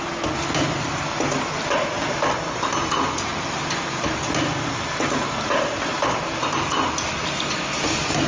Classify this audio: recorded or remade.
recorded